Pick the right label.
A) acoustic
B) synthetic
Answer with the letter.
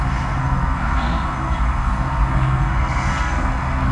B